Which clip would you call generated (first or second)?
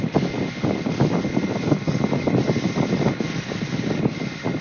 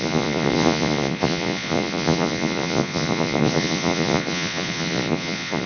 second